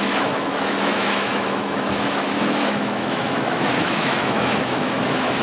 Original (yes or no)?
no